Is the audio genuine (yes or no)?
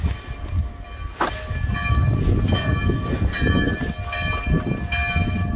yes